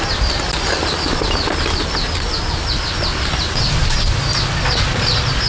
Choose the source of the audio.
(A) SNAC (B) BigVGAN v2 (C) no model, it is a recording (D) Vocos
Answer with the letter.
C